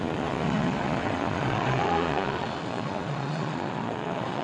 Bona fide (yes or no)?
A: no